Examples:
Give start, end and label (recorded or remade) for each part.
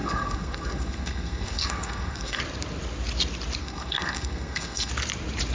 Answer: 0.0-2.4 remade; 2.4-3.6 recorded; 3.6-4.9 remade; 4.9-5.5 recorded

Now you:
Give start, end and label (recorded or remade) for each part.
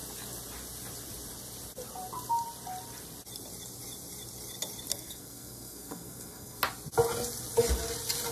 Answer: 0.0-4.9 recorded; 4.9-6.6 remade; 6.6-8.3 recorded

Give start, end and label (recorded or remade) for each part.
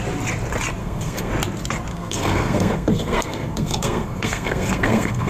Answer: 0.0-0.8 recorded; 0.8-1.3 remade; 1.3-1.9 recorded; 1.9-5.3 remade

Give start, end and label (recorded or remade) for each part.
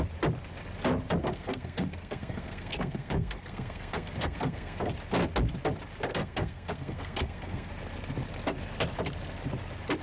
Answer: 0.0-1.2 recorded; 1.2-4.9 remade; 4.9-6.1 recorded; 6.1-7.7 remade; 7.7-10.0 recorded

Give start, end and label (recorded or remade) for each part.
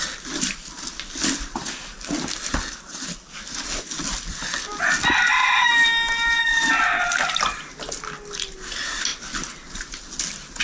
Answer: 0.0-10.6 recorded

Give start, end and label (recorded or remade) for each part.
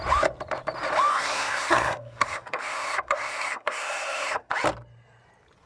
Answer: 0.0-1.1 recorded; 1.1-4.5 remade; 4.5-5.7 recorded